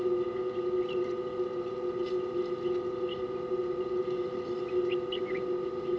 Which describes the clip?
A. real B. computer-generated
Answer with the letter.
A